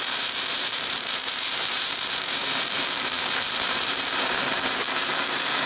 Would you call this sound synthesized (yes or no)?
yes